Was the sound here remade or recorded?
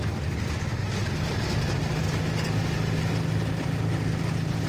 recorded